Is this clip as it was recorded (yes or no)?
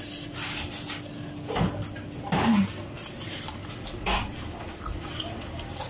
yes